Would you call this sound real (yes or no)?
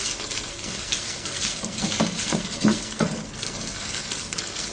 no